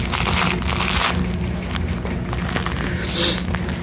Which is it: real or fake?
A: real